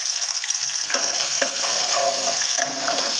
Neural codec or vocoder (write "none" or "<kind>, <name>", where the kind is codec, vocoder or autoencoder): codec, SNAC